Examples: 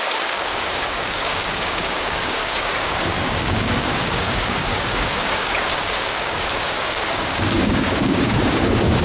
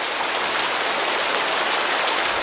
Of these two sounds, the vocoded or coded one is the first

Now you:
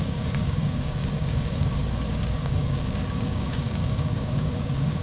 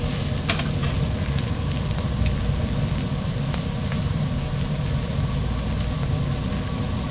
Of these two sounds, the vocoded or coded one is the first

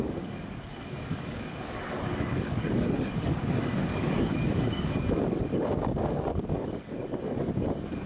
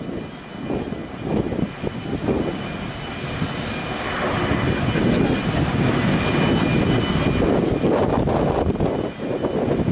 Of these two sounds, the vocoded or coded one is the first